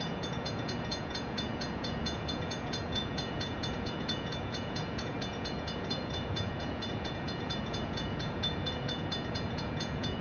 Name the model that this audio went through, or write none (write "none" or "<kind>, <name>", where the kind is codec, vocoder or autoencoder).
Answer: vocoder, Vocos